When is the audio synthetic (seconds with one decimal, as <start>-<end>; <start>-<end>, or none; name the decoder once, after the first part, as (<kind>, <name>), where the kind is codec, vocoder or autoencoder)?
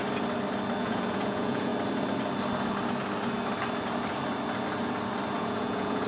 0.8-1.7 (vocoder, Vocos); 5.4-6.1